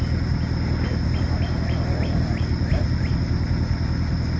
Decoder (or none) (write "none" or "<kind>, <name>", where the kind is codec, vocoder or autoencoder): none